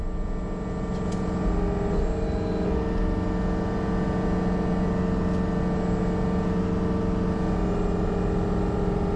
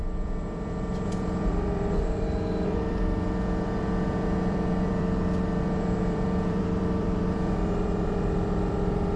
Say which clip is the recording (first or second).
first